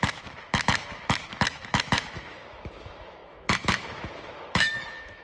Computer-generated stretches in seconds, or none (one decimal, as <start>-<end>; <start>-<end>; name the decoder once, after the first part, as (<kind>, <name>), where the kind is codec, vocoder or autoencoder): 0.0-5.2 (autoencoder, DAC-VAE)